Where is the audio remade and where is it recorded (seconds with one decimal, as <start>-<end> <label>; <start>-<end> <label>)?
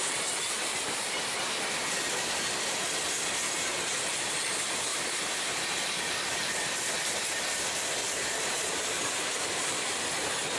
0.0-0.7 recorded; 0.7-1.3 remade; 1.3-4.9 recorded; 4.9-5.6 remade; 5.6-8.0 recorded; 8.0-10.0 remade; 10.0-10.6 recorded